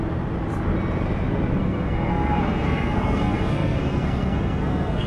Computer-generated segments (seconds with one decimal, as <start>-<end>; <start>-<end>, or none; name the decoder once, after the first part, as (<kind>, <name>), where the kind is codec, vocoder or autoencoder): 1.6-5.1 (codec, SNAC)